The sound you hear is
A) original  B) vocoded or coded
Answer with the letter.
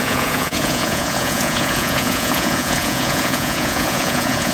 B